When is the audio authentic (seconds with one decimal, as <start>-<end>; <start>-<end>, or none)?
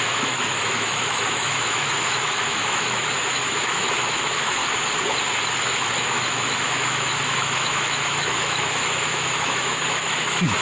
4.6-5.6